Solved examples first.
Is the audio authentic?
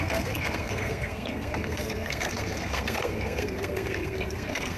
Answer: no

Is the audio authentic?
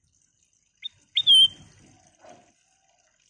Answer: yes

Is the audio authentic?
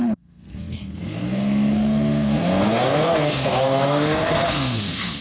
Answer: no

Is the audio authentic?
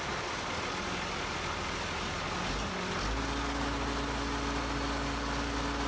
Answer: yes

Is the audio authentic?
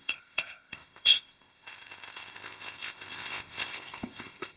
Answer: no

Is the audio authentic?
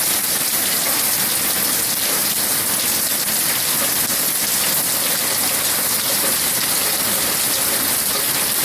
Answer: no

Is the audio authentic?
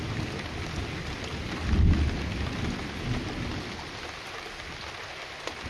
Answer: yes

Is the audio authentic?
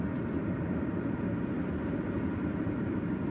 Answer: yes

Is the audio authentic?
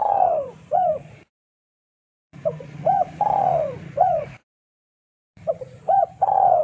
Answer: no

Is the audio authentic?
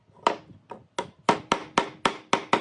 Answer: yes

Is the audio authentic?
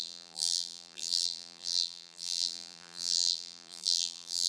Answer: no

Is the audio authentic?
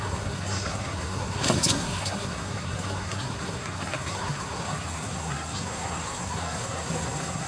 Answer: no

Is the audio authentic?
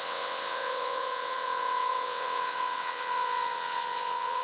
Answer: no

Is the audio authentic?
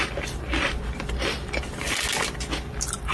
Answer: yes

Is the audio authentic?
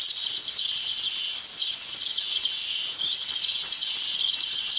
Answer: yes